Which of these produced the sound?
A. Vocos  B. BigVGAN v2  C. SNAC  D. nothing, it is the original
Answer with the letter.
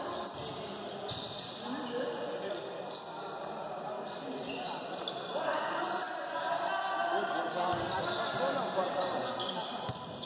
D